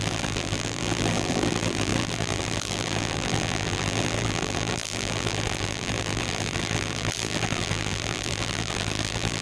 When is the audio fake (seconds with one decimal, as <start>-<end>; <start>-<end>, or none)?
0.0-9.4